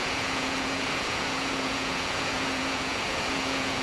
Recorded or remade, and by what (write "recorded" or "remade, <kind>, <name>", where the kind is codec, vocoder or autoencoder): remade, vocoder, Vocos